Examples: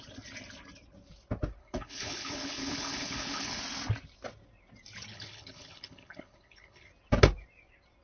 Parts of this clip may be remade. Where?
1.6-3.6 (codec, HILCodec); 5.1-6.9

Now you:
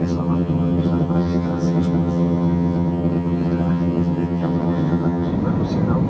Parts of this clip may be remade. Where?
0.0-5.3 (vocoder, HiFi-GAN)

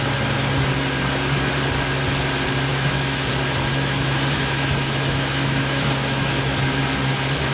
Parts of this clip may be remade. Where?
2.7-3.3 (autoencoder, DAC-VAE); 3.7-6.8